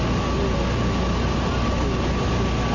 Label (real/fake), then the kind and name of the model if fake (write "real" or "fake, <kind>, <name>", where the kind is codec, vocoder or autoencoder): real